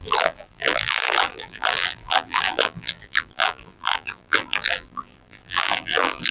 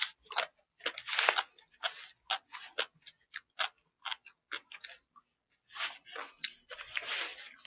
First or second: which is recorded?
second